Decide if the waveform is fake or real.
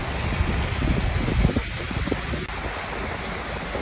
real